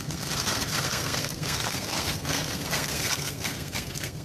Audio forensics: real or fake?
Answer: fake